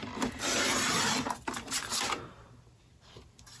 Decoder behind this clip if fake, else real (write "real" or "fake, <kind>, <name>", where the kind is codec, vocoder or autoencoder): fake, vocoder, BigVGAN v2